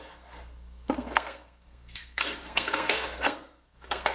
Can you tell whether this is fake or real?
fake